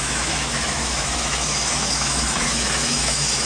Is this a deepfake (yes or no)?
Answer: yes